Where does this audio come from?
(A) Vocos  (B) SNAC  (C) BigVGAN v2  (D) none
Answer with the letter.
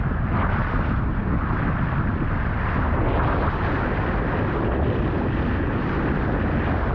D